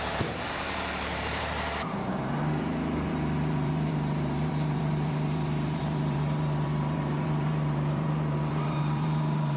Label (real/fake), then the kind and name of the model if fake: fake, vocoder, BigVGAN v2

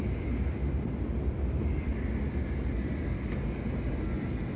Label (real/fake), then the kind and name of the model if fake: real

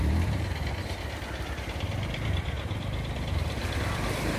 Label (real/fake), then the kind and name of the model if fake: fake, vocoder, BigVGAN v2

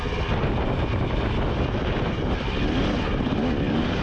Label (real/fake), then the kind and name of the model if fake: real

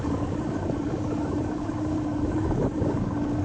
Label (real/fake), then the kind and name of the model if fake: fake, codec, DAC